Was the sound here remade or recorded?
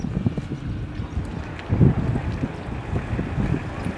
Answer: recorded